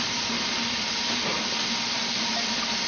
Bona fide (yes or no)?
yes